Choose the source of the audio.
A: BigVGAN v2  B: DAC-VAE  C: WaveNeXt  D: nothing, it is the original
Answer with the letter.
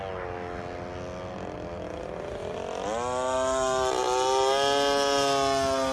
D